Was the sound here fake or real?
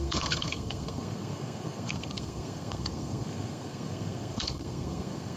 fake